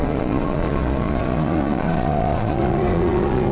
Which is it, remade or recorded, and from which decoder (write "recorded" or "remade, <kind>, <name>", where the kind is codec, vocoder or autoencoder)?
remade, vocoder, Vocos